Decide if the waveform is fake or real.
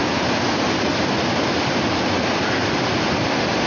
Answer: real